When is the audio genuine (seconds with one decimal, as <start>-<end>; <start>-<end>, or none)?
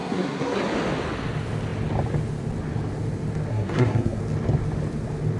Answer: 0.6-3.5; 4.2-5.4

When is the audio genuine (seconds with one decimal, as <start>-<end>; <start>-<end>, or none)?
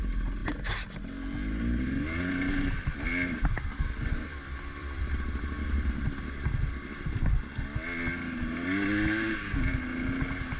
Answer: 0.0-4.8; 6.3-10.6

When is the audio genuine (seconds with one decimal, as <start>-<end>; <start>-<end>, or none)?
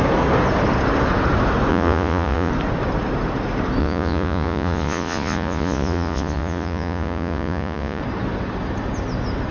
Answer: 0.0-1.7; 2.5-3.8; 8.0-9.5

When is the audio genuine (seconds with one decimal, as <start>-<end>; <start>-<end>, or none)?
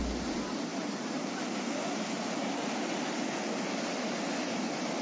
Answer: 0.0-5.0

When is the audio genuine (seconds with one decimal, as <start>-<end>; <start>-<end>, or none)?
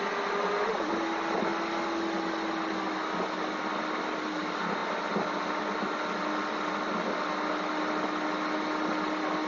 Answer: 0.0-9.5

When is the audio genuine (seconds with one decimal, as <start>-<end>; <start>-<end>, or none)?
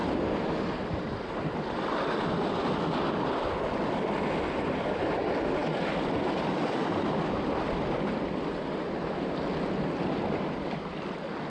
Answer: 0.0-11.5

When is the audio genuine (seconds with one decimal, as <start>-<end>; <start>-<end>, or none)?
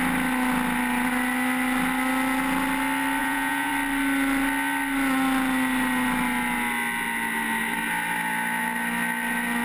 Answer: 0.0-3.2; 3.7-9.6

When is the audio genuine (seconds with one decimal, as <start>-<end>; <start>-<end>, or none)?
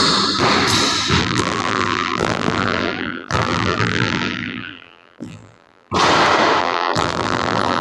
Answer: 0.0-1.2; 5.9-6.6